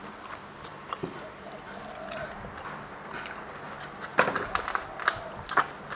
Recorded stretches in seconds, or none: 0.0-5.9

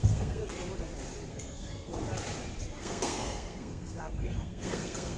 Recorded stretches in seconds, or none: 0.4-1.3; 1.9-2.8

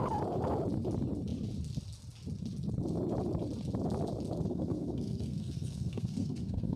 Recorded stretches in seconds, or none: 0.0-4.5

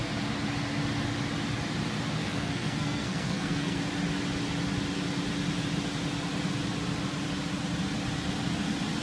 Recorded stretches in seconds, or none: 0.0-2.2; 3.8-9.0

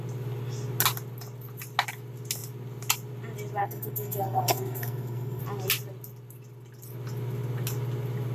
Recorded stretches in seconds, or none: 0.0-3.6; 5.4-8.3

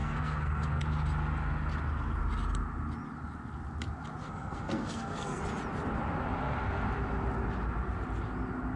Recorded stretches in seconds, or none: 0.8-4.2; 5.4-8.8